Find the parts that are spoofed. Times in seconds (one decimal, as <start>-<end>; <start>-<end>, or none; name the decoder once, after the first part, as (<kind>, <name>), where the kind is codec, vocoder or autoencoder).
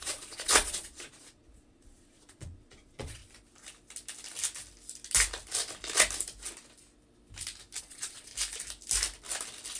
0.0-3.2 (vocoder, Vocos); 7.8-8.3